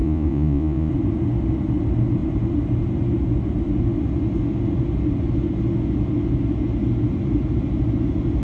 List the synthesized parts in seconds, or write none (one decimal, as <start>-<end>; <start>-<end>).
0.0-0.9